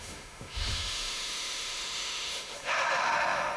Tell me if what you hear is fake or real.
fake